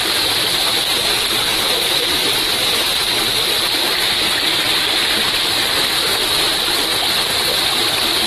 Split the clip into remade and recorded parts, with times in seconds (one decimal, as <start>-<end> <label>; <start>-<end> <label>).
0.0-8.3 recorded